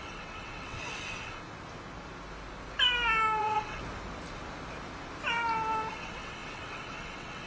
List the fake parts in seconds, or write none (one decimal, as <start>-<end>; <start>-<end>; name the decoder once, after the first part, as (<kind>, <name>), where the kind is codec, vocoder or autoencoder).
0.0-1.4 (vocoder, WaveNeXt); 3.4-3.8; 5.9-7.5